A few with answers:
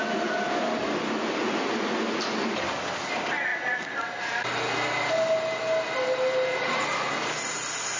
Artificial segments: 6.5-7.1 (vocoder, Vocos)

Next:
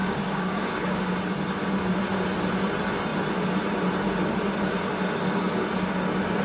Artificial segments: 0.0-1.1 (codec, DAC)

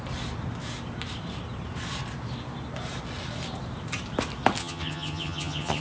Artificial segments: 4.6-5.8 (vocoder, HiFi-GAN)

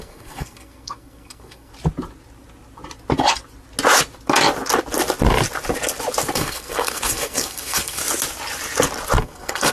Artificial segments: 0.0-1.7 (codec, SNAC); 6.3-8.0; 9.2-9.7